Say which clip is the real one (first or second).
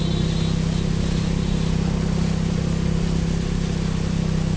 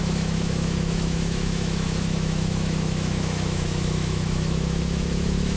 first